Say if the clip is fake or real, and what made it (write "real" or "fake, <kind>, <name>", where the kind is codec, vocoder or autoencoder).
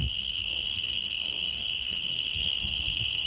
fake, codec, SNAC